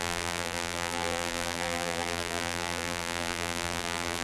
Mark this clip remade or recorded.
remade